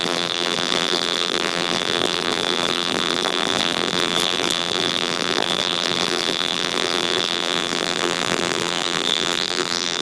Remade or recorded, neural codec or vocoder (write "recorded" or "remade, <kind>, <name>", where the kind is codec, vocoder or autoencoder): remade, vocoder, BigVGAN v2